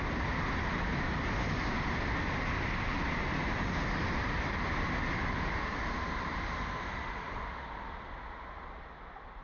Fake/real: real